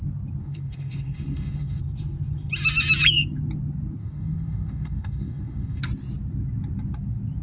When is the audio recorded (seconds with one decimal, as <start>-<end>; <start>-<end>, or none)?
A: 0.0-0.4; 1.8-4.0; 5.8-7.4